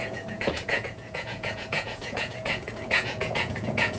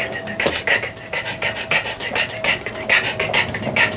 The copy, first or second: first